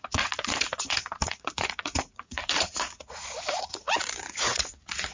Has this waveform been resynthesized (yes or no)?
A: yes